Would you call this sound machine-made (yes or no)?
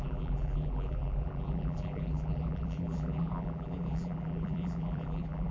yes